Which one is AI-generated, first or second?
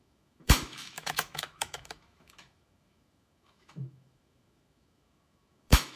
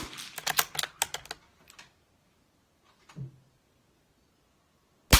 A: first